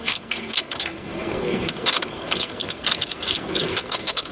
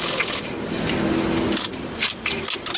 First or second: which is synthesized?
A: first